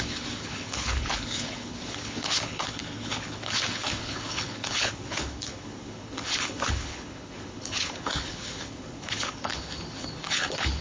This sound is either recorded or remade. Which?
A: remade